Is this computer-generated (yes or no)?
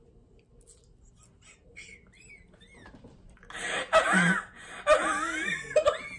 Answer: no